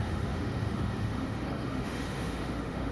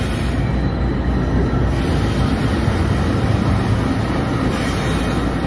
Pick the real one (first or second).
second